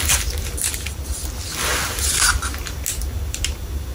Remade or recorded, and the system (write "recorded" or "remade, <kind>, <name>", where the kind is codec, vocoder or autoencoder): recorded